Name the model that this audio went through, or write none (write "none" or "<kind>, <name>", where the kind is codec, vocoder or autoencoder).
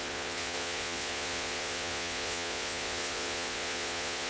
vocoder, Vocos